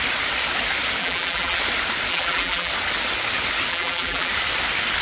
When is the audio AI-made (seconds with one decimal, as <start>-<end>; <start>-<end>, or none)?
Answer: 1.0-1.6; 2.1-2.7; 3.7-4.3